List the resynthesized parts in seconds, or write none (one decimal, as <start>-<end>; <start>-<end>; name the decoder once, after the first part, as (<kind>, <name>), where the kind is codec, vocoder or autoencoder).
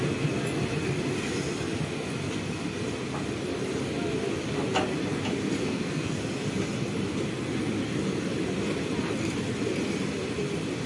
5.6-6.2 (codec, SNAC)